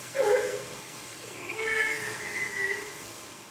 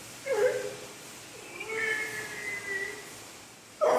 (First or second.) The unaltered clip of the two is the second